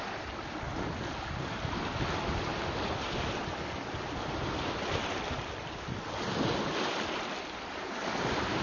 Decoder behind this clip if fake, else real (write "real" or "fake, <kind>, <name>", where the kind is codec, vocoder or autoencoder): real